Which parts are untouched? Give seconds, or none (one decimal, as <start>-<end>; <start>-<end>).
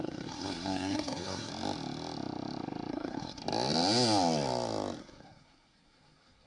1.5-2.9; 3.4-5.0